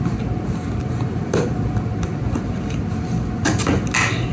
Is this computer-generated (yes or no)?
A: no